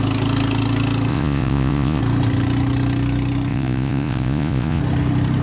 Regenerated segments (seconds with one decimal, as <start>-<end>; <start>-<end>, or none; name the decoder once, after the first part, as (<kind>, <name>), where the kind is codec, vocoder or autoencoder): 1.1-2.0 (vocoder, Vocos); 3.5-4.8